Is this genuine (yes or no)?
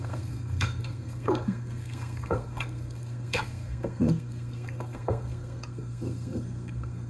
no